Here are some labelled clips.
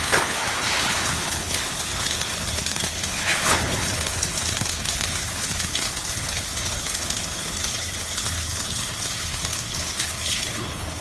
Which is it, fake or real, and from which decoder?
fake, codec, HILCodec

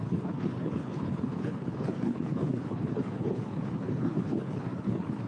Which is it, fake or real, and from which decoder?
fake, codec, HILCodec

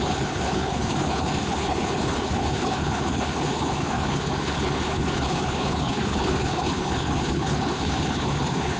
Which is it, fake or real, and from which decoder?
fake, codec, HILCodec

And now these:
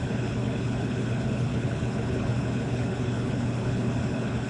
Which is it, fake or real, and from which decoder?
fake, codec, HILCodec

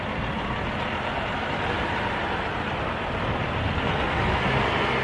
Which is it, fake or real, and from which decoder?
real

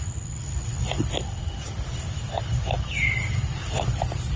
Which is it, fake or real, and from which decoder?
real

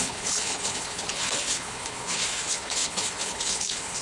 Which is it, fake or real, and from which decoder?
fake, codec, HILCodec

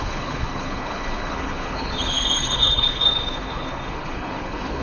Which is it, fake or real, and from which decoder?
fake, codec, HILCodec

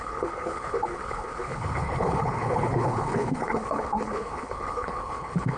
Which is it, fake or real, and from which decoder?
fake, codec, HILCodec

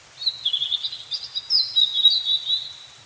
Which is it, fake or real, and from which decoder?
real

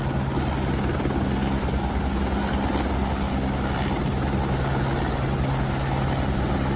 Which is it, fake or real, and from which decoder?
real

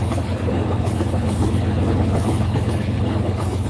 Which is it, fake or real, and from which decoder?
fake, codec, HILCodec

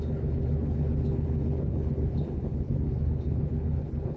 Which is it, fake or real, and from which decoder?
fake, codec, HILCodec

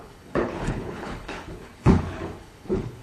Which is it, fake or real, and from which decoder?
fake, codec, HILCodec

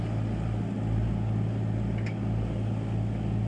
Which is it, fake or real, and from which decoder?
real